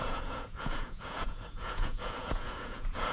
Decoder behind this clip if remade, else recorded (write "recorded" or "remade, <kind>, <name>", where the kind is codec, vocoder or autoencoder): remade, vocoder, Vocos